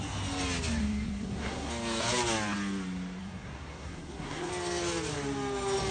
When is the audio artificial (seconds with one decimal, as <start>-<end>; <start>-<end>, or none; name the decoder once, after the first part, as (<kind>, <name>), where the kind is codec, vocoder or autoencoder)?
0.8-1.7 (codec, SNAC); 3.2-4.5